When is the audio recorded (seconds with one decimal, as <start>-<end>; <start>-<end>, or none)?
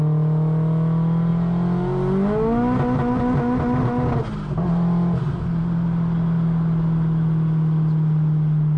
0.0-8.8